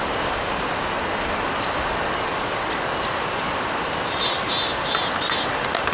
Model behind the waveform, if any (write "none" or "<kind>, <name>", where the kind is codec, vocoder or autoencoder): none